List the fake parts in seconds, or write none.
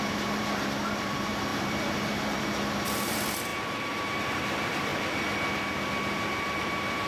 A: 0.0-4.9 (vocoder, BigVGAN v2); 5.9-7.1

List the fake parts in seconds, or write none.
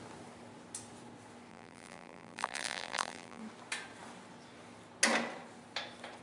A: 1.5-3.4 (vocoder, BigVGAN v2)